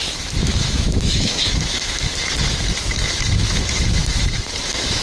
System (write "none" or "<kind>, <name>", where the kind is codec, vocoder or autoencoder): autoencoder, DAC-VAE